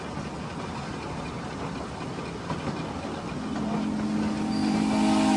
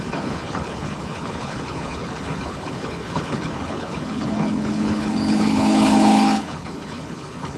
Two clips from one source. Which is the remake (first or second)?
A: second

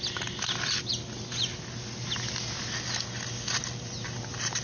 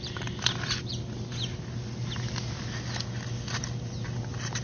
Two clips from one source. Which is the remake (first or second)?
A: second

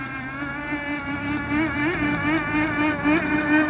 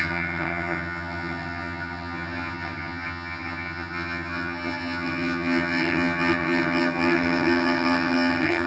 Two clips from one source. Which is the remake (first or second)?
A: second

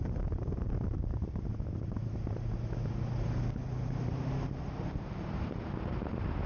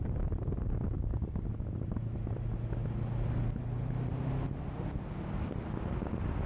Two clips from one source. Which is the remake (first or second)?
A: first